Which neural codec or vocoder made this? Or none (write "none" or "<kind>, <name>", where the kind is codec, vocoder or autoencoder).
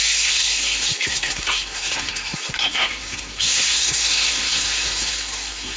codec, SNAC